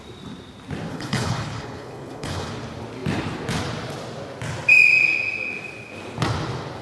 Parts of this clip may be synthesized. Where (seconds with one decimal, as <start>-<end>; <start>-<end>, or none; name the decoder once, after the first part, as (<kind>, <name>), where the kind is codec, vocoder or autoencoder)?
0.9-2.5 (codec, HILCodec)